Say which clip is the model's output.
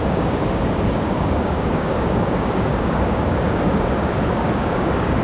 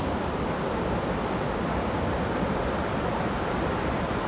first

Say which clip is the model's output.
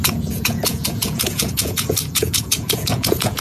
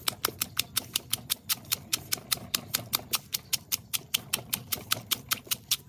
first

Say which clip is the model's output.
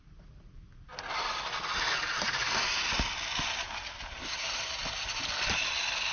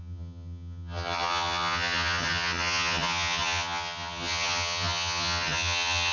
second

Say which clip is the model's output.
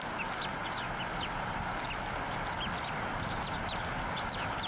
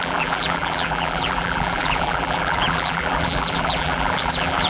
second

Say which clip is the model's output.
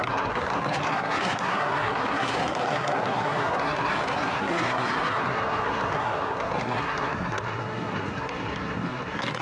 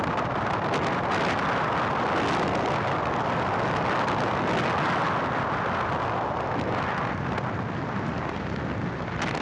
first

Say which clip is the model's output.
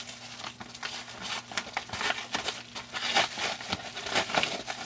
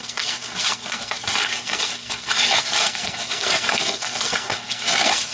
second